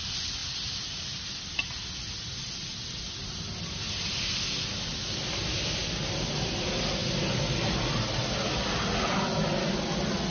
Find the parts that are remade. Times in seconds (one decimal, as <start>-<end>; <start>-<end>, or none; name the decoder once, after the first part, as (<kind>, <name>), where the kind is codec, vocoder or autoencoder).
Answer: none